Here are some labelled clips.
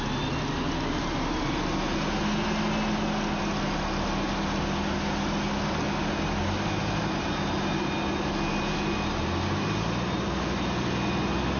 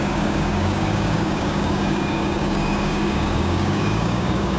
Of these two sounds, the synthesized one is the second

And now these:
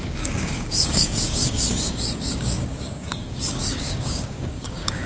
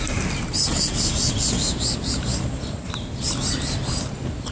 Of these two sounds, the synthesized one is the first